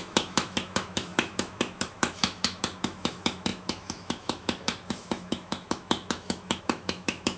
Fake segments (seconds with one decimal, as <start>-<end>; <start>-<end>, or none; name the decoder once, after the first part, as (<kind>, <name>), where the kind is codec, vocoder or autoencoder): 0.0-7.4 (autoencoder, DAC-VAE)

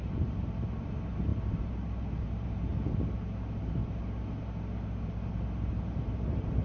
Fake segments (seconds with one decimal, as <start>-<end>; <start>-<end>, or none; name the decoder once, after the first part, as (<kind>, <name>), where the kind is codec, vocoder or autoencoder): 0.0-2.7 (vocoder, BigVGAN v2); 5.7-6.6